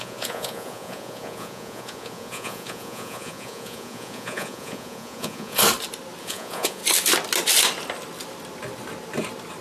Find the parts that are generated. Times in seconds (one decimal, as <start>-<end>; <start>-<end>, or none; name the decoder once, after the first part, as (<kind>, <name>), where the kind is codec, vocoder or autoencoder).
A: 0.0-5.6 (vocoder, Vocos); 6.2-6.8